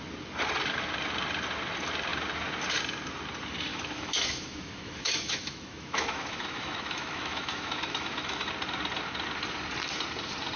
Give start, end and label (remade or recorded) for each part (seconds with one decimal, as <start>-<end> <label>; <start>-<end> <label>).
0.0-3.7 recorded; 3.7-8.5 remade; 8.5-10.6 recorded

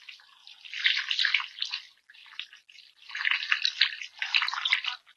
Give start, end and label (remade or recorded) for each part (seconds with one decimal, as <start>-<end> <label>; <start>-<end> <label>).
0.0-5.2 recorded

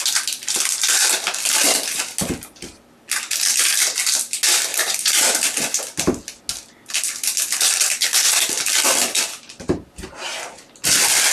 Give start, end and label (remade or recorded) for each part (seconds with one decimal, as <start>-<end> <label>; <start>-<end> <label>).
0.0-4.7 recorded; 4.7-5.3 remade; 5.3-11.3 recorded

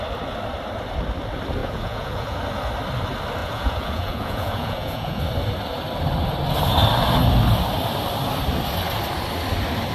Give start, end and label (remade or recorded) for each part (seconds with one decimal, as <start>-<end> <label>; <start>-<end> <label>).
0.0-1.6 recorded; 1.6-2.4 remade; 2.4-3.4 recorded; 3.4-5.2 remade; 5.2-9.9 recorded